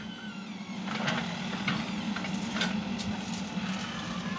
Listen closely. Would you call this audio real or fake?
real